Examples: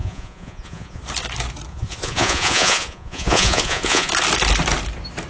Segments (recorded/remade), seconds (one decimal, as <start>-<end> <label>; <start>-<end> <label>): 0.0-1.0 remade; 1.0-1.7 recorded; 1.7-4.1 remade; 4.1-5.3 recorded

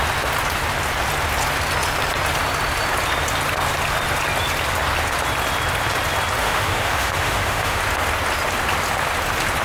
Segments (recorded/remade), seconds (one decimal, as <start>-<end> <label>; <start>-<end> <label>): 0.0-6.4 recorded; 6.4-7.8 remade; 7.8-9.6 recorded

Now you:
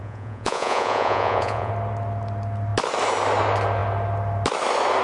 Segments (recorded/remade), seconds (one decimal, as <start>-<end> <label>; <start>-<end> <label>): 0.0-1.7 remade; 1.7-5.0 recorded

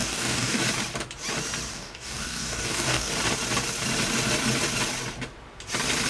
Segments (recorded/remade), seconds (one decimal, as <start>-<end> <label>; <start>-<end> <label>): 0.0-0.6 remade; 0.6-1.7 recorded; 1.7-3.1 remade; 3.1-6.1 recorded

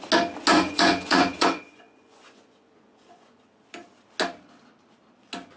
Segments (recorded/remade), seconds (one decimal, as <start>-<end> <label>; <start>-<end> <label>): 0.0-0.5 recorded; 0.5-3.6 remade; 3.6-5.6 recorded